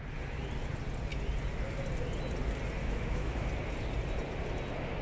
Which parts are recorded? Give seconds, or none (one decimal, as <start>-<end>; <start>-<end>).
0.0-2.8; 3.5-5.0